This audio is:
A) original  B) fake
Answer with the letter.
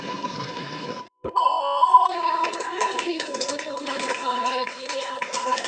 B